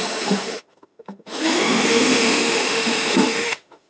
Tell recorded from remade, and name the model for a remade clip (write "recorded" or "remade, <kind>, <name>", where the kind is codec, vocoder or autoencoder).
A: remade, autoencoder, DAC-VAE